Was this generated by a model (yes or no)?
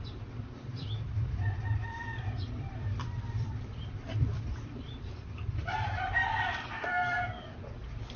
yes